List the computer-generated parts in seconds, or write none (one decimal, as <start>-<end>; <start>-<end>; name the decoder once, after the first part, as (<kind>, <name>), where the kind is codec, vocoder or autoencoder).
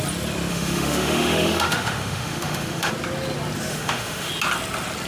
0.5-2.9 (autoencoder, DAC-VAE); 3.7-4.3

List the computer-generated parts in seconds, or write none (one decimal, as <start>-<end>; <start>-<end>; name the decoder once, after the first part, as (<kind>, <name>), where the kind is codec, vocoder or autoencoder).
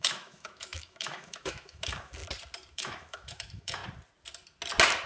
0.0-2.2 (autoencoder, DAC-VAE); 2.7-3.8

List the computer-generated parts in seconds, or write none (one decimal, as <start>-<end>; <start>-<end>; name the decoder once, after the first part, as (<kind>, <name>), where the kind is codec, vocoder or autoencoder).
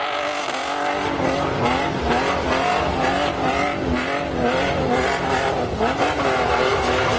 none